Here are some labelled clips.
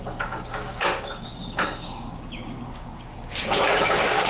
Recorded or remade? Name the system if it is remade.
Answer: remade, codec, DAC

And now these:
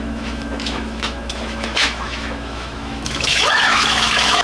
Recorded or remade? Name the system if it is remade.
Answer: remade, autoencoder, DAC-VAE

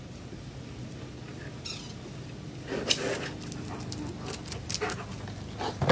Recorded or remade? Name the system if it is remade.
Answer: recorded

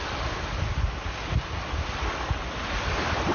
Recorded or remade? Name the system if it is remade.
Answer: recorded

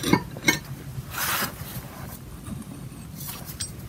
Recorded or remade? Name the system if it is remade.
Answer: recorded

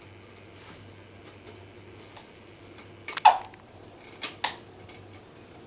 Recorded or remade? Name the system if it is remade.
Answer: recorded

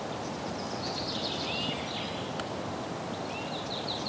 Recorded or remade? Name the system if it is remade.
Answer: recorded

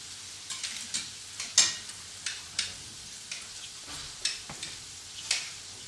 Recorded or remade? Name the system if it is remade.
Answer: recorded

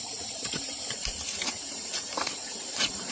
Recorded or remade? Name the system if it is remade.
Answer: remade, vocoder, BigVGAN v2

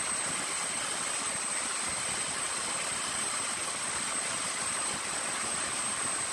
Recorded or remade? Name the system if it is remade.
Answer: recorded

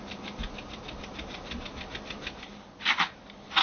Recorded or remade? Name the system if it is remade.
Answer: recorded